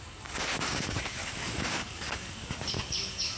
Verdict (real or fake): fake